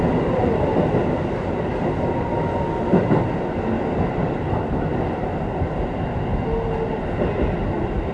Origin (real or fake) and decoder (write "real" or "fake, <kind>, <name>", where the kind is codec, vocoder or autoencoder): real